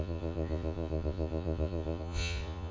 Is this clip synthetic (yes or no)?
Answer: yes